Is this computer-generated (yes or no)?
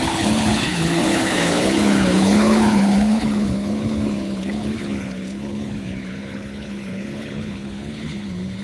yes